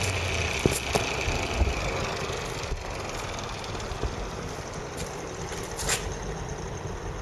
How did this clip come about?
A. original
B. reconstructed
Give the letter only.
A